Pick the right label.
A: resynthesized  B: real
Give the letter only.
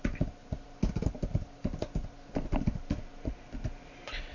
B